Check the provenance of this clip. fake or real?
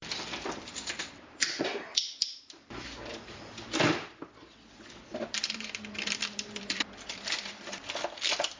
fake